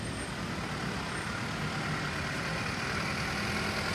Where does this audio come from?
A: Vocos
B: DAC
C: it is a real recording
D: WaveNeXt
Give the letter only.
C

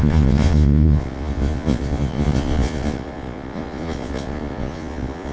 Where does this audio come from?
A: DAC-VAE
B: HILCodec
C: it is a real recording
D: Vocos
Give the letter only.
D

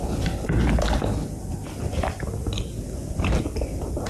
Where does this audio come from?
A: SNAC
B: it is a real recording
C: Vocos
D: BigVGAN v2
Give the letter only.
B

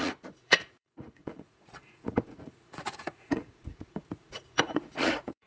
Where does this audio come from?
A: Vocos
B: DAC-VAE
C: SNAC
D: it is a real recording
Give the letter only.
A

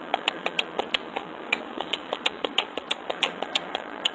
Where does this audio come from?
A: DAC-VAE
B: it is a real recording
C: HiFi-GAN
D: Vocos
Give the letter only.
D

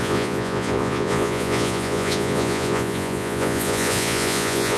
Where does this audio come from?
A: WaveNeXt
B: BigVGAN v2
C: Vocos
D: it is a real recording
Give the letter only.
C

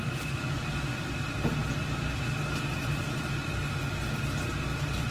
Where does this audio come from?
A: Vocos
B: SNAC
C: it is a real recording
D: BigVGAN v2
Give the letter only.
C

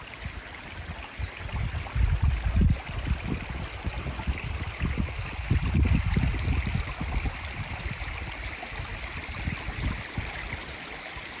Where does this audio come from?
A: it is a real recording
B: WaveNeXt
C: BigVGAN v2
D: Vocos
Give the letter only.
A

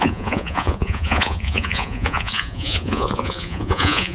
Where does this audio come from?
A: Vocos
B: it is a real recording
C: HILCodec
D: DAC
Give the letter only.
A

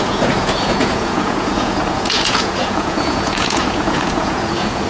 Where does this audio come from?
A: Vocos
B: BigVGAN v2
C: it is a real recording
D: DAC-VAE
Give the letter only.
A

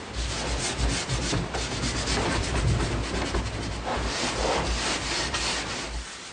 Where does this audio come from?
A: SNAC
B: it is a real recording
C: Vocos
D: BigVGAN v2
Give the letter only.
B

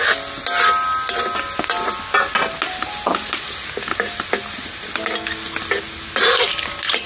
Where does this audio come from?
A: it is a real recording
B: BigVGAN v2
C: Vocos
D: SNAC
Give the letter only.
A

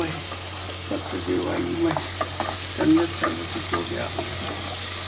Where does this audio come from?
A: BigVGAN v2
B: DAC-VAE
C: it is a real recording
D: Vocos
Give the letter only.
C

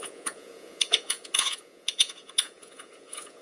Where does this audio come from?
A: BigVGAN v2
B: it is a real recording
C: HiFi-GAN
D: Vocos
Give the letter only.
D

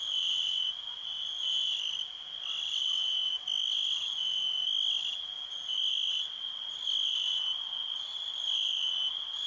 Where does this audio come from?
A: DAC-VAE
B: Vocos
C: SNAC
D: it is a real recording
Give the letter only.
D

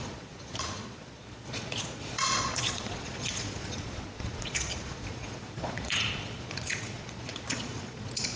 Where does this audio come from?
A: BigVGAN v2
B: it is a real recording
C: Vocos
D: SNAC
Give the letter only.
C